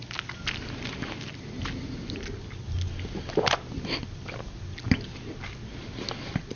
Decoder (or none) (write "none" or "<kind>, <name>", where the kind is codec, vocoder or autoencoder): none